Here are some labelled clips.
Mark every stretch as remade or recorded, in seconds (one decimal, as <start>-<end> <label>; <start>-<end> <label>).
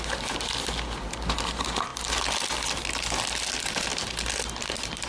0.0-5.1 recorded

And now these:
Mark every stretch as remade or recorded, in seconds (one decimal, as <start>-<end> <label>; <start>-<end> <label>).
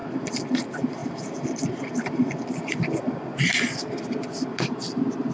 0.0-5.3 recorded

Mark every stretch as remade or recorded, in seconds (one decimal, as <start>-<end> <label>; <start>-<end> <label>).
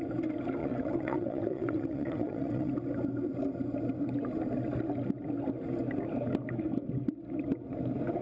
0.0-0.6 recorded; 0.6-2.7 remade; 2.7-8.2 recorded